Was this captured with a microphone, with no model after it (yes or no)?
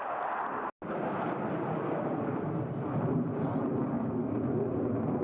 yes